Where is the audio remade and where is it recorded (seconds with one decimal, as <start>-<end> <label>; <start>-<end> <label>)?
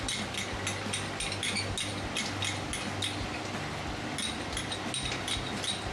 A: 0.0-5.9 recorded